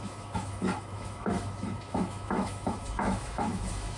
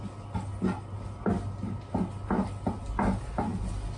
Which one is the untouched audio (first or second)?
second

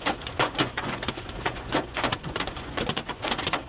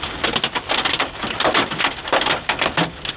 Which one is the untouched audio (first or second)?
second